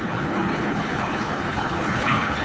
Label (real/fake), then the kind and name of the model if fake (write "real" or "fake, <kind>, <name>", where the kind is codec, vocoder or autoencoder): fake, codec, HILCodec